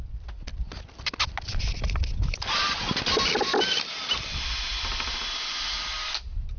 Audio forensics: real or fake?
real